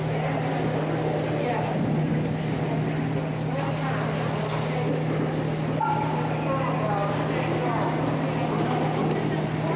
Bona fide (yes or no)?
yes